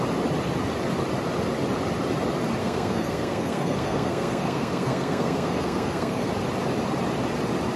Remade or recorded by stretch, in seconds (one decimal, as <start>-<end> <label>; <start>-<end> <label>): 0.0-2.6 recorded; 2.6-6.3 remade; 6.3-7.8 recorded

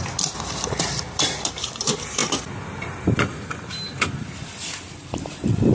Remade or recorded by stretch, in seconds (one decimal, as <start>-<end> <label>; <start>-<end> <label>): 0.0-5.7 recorded

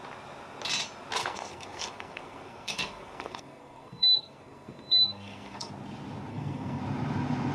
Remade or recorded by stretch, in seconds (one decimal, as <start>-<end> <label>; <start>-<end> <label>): 0.0-1.2 recorded; 1.2-5.7 remade; 5.7-6.3 recorded; 6.3-6.8 remade; 6.8-7.5 recorded

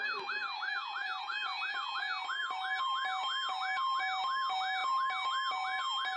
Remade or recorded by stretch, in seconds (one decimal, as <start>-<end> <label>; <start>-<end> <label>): 0.0-6.2 recorded

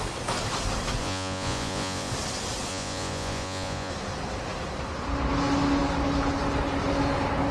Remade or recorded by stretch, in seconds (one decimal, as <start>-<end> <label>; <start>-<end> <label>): 0.0-1.0 recorded; 1.0-2.1 remade; 2.1-2.7 recorded; 2.7-3.9 remade; 3.9-7.5 recorded

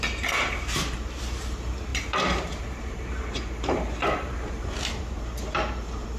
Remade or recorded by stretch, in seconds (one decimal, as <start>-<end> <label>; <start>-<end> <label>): 0.0-6.2 remade

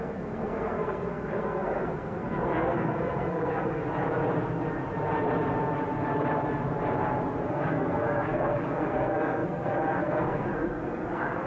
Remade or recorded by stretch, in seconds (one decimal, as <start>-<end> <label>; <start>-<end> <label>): 0.0-3.8 remade; 3.8-7.5 recorded; 7.5-11.5 remade